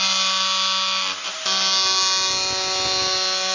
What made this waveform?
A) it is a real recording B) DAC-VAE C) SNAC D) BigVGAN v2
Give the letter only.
A